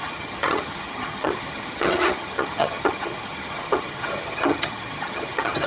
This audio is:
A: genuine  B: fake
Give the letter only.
B